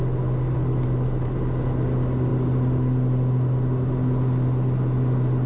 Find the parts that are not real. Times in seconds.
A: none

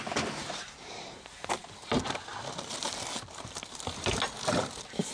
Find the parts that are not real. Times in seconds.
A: none

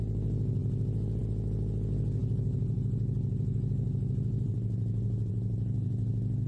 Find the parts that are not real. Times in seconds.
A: 2.2-6.1 (vocoder, BigVGAN v2)

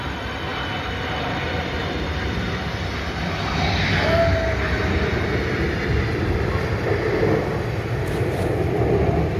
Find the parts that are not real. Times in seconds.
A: none